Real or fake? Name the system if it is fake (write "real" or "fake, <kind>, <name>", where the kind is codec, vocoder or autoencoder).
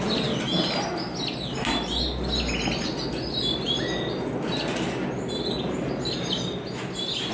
real